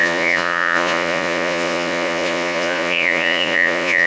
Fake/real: fake